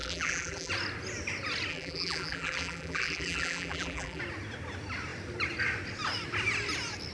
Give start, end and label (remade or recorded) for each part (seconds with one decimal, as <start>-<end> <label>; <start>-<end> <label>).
0.0-0.7 remade; 0.7-1.7 recorded; 1.7-4.2 remade; 4.2-7.1 recorded